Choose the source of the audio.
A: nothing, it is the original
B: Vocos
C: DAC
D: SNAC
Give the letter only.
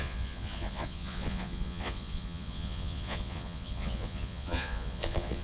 B